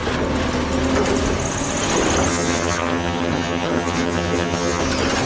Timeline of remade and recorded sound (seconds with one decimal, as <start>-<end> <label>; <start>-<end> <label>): 0.0-2.3 recorded; 2.3-4.8 remade; 4.8-5.3 recorded